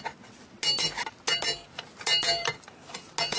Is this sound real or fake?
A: real